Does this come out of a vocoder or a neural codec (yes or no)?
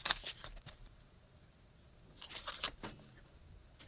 no